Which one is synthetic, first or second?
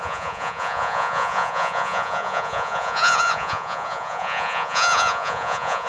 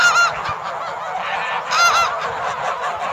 first